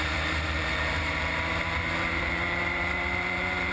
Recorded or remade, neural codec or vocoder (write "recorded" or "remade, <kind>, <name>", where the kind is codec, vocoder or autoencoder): remade, vocoder, BigVGAN v2